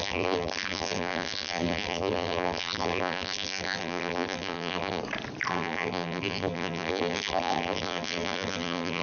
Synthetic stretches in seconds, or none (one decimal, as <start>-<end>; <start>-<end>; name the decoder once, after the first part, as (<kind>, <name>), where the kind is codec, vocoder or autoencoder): 0.0-5.0 (vocoder, BigVGAN v2); 5.5-9.0